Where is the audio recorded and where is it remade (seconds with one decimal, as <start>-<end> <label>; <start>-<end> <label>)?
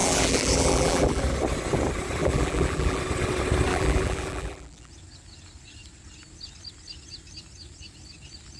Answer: 0.0-1.2 remade; 1.2-2.2 recorded; 2.2-3.0 remade; 3.0-3.7 recorded; 3.7-4.9 remade; 4.9-8.6 recorded